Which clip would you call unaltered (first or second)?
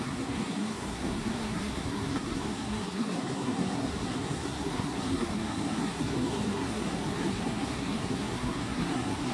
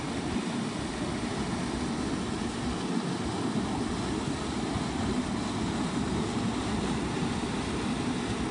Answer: second